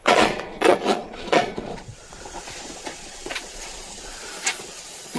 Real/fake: fake